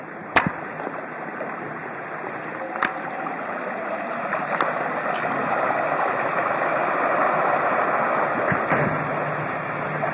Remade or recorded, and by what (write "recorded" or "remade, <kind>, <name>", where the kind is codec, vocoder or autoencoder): recorded